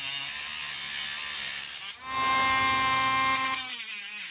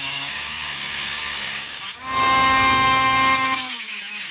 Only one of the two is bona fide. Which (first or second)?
first